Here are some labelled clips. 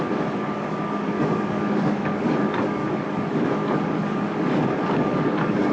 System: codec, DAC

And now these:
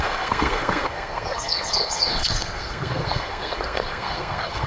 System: codec, SNAC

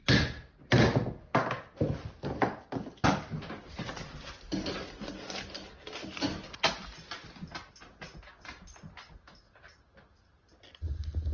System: none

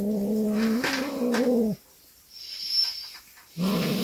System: none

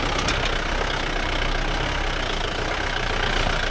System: none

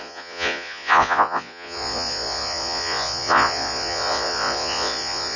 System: vocoder, Vocos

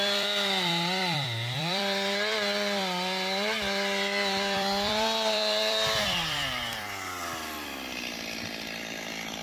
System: vocoder, BigVGAN v2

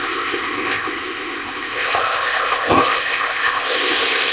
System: codec, ZipCodec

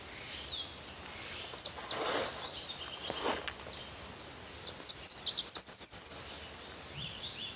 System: none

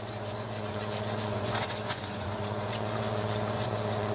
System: vocoder, Vocos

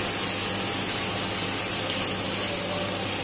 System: none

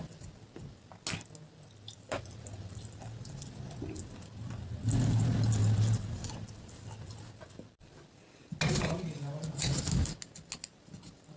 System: none